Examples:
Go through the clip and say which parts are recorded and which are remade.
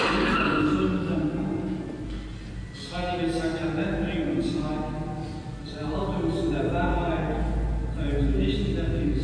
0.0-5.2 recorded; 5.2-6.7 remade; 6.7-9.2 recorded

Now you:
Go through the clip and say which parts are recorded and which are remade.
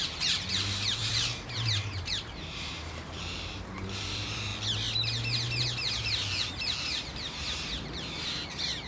0.0-4.5 remade; 4.5-6.8 recorded; 6.8-8.9 remade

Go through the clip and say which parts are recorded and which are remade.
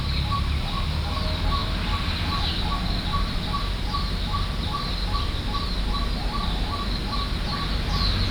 0.0-8.3 recorded